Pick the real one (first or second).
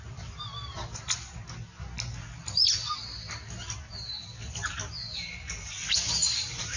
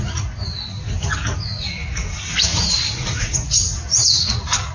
first